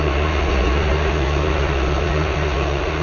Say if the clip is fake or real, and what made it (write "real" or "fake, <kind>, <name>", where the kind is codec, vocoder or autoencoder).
fake, vocoder, Vocos